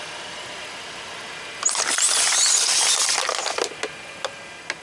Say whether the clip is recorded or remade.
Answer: recorded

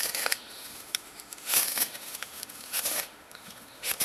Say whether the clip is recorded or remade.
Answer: remade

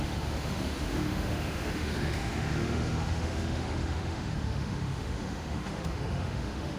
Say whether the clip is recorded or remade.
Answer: remade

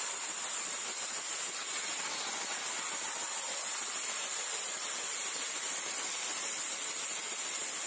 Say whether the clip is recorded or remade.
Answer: recorded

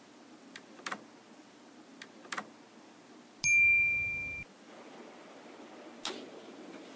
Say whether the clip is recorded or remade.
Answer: recorded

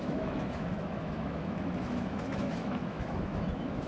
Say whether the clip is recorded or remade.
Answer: remade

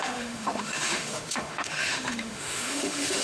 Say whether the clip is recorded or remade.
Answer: remade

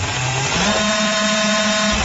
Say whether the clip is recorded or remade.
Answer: recorded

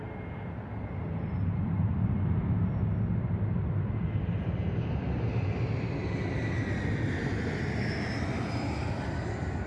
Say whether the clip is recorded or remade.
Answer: recorded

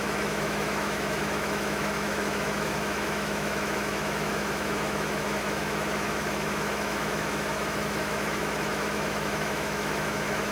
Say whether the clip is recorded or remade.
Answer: remade